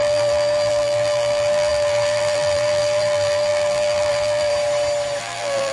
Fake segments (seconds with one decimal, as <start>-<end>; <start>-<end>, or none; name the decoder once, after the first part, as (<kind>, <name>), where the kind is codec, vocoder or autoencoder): 0.0-4.5 (vocoder, BigVGAN v2); 5.2-5.7

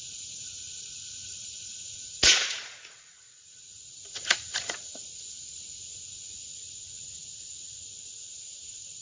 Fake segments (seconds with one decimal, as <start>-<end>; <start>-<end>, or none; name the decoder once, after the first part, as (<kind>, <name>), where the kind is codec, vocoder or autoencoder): 0.0-5.0 (vocoder, Vocos); 5.9-9.0

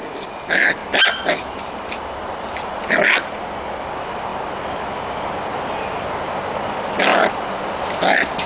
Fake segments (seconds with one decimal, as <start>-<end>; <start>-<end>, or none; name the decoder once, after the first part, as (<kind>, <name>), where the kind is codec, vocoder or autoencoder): none